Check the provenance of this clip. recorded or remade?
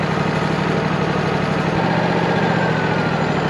recorded